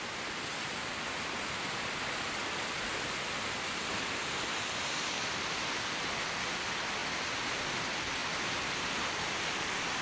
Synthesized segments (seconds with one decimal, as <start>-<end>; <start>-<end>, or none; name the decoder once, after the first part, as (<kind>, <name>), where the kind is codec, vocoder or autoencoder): none